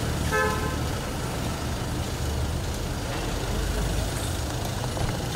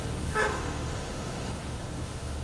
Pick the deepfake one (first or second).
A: second